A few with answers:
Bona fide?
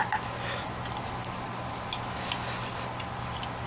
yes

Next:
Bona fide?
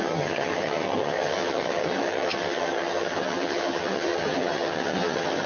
no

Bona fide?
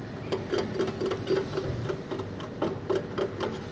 yes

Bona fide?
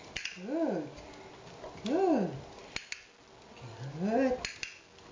yes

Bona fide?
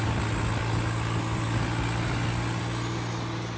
yes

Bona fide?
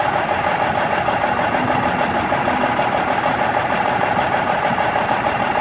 yes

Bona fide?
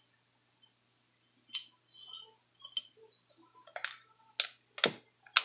yes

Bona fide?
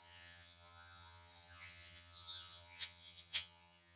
no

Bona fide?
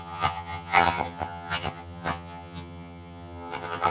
no